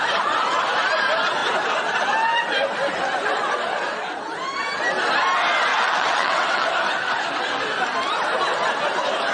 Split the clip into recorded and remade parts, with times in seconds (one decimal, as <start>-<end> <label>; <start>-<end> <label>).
0.0-5.7 recorded; 5.7-6.7 remade; 6.7-9.3 recorded